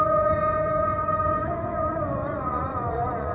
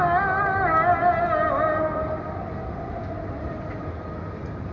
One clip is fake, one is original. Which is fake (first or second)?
first